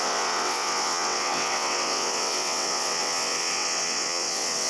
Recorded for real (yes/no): no